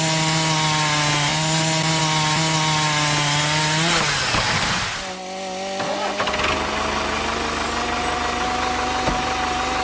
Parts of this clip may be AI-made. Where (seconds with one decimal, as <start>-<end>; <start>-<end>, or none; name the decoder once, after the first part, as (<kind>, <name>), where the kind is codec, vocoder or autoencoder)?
none